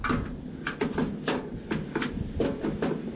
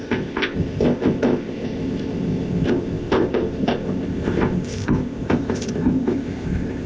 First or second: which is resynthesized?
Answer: second